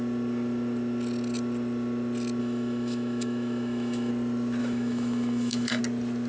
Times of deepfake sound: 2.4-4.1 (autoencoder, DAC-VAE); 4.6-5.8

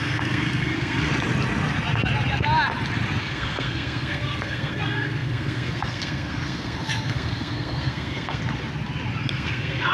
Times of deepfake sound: 0.0-1.1 (codec, SNAC); 3.2-8.4; 9.3-9.9

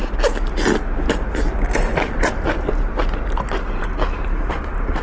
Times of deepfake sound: none

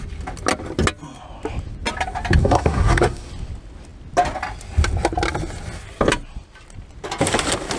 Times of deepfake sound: 2.4-3.3 (codec, SNAC)

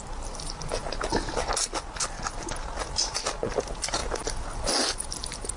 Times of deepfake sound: none

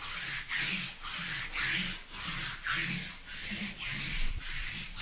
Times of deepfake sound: 3.3-5.0 (vocoder, BigVGAN v2)